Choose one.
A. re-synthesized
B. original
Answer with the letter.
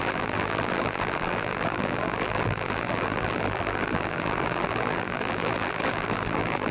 A